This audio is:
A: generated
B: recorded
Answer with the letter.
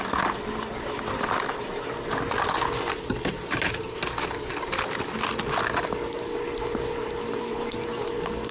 B